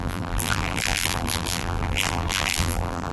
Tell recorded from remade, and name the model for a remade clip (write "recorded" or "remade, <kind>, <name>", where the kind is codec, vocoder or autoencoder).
remade, vocoder, BigVGAN v2